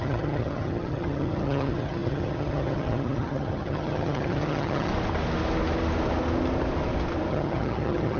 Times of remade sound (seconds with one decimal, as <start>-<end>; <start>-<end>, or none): 0.0-4.9; 7.3-8.2